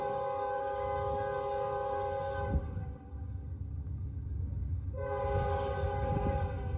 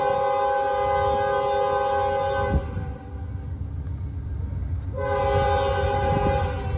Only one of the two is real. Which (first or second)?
second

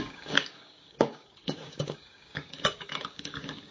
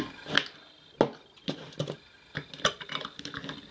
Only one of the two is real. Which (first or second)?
second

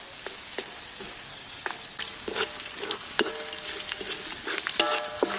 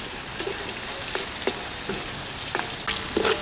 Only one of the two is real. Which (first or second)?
second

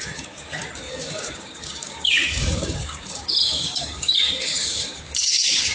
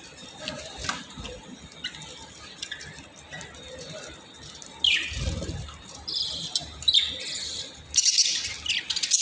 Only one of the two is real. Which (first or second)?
second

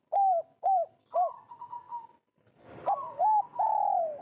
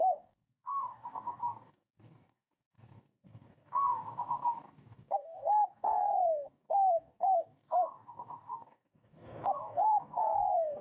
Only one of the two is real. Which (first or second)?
first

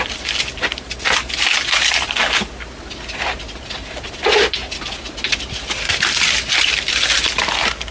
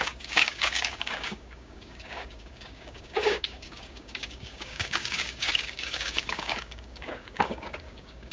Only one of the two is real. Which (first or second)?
first